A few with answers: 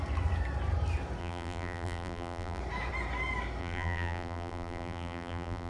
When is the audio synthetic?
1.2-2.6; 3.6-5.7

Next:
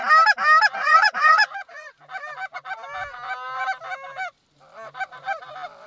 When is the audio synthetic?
0.8-1.9

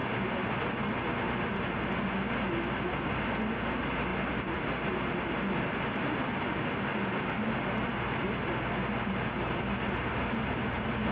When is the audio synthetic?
4.1-4.6

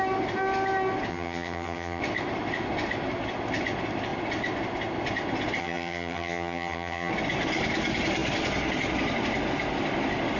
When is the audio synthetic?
1.1-2.0; 5.6-7.1

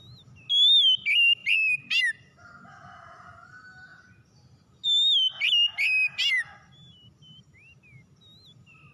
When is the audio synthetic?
none